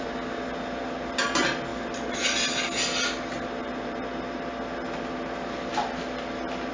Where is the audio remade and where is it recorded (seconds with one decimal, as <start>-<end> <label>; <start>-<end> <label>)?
0.0-6.7 recorded